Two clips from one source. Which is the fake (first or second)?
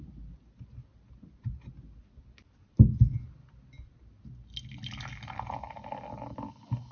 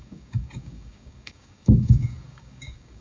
second